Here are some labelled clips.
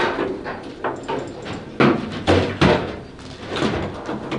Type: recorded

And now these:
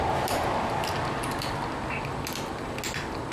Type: recorded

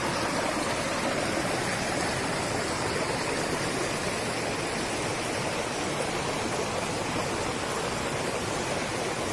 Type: recorded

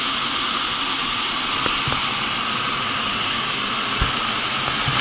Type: recorded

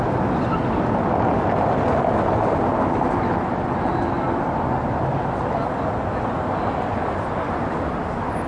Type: recorded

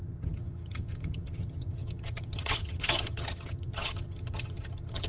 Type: remade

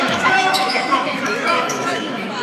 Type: remade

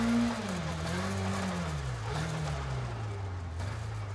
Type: recorded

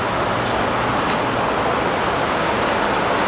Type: recorded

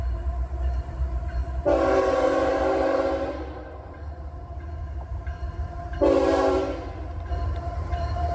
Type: remade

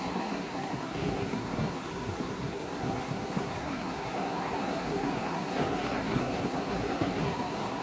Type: remade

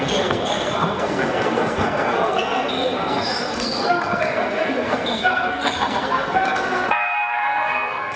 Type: remade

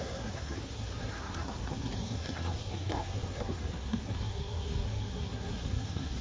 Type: remade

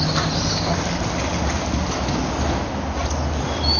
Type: recorded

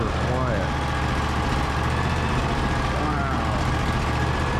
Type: recorded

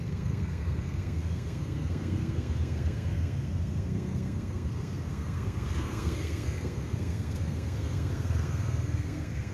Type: remade